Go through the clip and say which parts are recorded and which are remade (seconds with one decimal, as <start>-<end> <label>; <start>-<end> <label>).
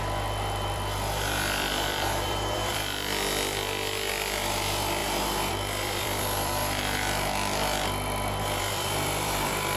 0.0-2.8 remade; 2.8-4.1 recorded; 4.1-5.0 remade; 5.0-5.5 recorded; 5.5-6.6 remade; 6.6-8.6 recorded; 8.6-9.8 remade